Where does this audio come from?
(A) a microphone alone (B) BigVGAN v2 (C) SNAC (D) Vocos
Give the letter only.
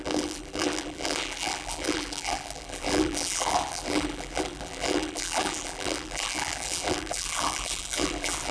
B